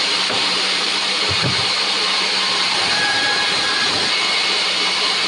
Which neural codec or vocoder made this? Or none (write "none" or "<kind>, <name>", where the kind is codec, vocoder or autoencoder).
vocoder, BigVGAN v2